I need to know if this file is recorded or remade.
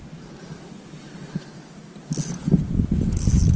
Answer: recorded